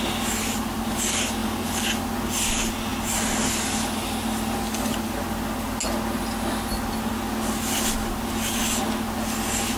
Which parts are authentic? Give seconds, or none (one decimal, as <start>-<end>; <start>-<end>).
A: 0.0-9.8

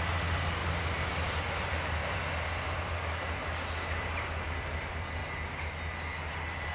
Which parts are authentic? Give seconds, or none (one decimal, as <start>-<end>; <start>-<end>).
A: 3.4-4.0; 5.2-6.3

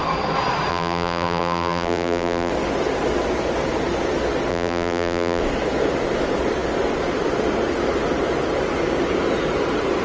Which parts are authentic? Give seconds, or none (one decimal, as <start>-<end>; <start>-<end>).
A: 0.0-0.7; 2.5-4.5; 5.4-10.0

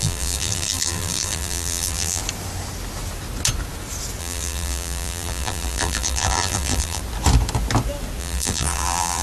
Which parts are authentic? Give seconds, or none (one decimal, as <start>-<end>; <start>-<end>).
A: 2.2-4.2; 7.0-8.2

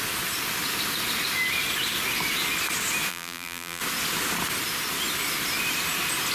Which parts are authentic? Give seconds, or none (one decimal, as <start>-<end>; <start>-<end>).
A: 0.0-3.1; 3.8-6.3